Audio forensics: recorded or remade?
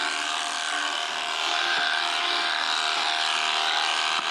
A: recorded